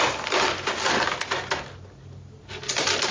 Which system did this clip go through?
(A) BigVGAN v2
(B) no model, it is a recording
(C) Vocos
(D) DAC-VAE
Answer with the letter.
B